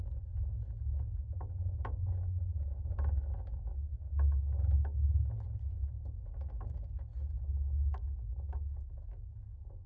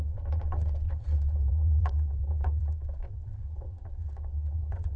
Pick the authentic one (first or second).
first